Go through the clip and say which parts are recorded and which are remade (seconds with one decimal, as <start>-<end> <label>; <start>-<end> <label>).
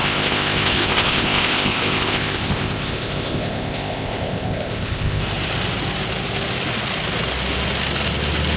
0.0-5.2 remade; 5.2-8.6 recorded